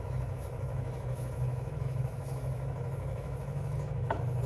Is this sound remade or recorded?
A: remade